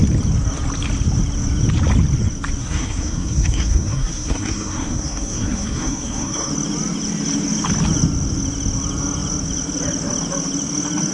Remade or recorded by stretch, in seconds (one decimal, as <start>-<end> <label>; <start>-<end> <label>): 0.0-2.6 recorded; 2.6-6.5 remade; 6.5-11.1 recorded